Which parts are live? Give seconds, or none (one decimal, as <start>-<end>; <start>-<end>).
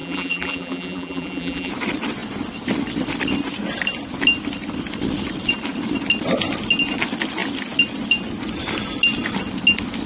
1.7-10.1